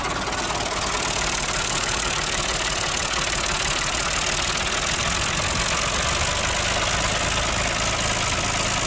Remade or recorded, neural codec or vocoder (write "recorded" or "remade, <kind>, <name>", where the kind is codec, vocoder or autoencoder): recorded